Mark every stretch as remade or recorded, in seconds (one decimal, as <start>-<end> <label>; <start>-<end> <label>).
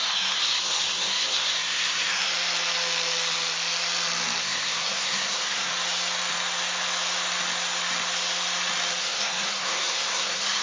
0.0-2.3 remade; 2.3-4.4 recorded; 4.4-5.7 remade; 5.7-9.0 recorded; 9.0-10.6 remade